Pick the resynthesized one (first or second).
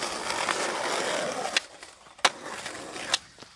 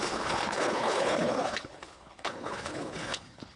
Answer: second